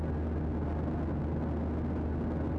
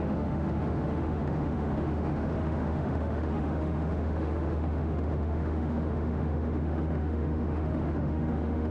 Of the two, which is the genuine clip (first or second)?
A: first